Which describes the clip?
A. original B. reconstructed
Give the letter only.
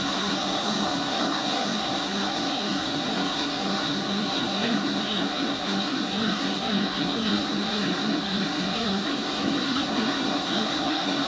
B